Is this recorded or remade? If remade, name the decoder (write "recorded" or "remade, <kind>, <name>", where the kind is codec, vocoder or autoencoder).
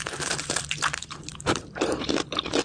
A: remade, vocoder, BigVGAN v2